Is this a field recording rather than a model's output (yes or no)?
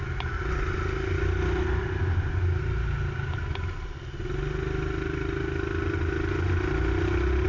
yes